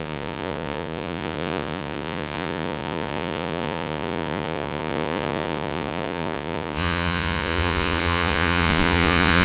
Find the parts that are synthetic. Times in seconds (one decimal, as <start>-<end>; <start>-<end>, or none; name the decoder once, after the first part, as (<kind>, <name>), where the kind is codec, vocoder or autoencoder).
0.0-9.4 (vocoder, Vocos)

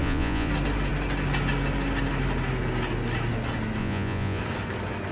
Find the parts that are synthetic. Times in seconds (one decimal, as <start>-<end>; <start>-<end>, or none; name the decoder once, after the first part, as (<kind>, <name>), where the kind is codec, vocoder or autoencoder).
0.0-0.5 (vocoder, Vocos); 3.8-4.4

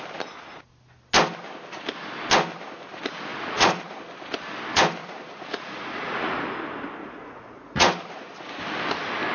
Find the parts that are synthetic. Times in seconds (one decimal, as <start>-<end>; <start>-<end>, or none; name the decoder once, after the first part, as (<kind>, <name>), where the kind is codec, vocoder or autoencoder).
3.3-4.0 (vocoder, Vocos); 5.0-6.4; 7.0-8.3

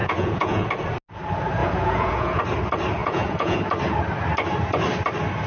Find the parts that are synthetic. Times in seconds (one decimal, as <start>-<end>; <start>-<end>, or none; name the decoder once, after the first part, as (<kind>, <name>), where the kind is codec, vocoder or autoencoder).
0.0-0.7 (vocoder, Vocos); 1.6-2.4; 3.0-3.6